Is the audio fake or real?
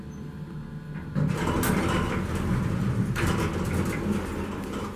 real